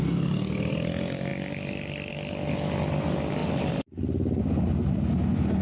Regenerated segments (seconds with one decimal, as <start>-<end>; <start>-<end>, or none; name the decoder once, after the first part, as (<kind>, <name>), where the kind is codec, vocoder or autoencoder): none

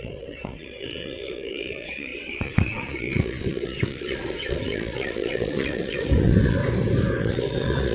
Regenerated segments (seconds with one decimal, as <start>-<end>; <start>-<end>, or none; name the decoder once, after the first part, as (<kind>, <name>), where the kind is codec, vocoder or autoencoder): 0.0-6.6 (vocoder, WaveNeXt); 7.2-7.9

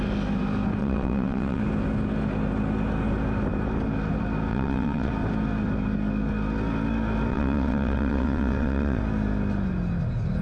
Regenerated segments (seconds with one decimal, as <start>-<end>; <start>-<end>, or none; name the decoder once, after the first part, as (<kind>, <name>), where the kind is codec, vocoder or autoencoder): 0.8-1.6 (vocoder, WaveNeXt); 4.5-5.1; 7.3-9.0

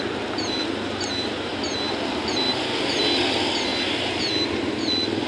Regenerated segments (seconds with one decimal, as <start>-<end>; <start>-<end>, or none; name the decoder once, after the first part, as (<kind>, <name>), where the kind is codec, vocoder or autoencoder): none

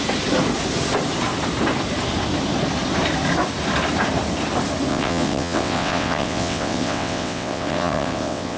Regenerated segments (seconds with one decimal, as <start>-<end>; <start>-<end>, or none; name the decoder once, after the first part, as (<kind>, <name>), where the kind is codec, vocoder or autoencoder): 4.9-8.6 (vocoder, WaveNeXt)

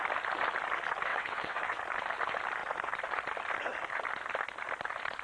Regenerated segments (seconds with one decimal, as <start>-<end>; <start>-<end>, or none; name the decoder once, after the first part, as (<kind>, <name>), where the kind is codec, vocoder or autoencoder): 1.1-1.8 (vocoder, WaveNeXt)